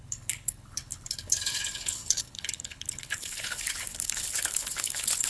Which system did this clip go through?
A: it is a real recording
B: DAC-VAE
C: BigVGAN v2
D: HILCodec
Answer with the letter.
D